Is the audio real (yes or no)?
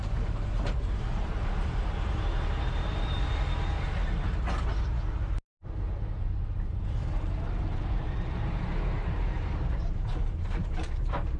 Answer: no